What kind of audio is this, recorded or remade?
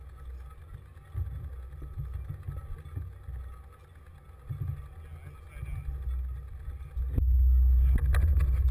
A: recorded